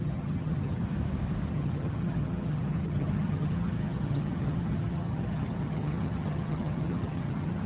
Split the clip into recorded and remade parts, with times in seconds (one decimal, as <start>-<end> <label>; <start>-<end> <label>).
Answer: 0.0-0.8 remade; 0.8-1.5 recorded; 1.5-7.7 remade